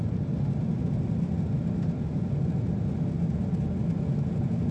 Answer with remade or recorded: recorded